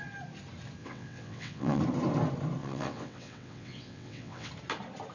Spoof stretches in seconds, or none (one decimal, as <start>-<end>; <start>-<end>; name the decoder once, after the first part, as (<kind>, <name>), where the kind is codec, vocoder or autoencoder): 0.8-1.8 (vocoder, WaveNeXt); 2.6-4.5